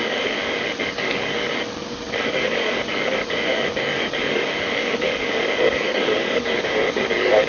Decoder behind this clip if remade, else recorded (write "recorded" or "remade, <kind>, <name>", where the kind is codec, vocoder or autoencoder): remade, codec, DAC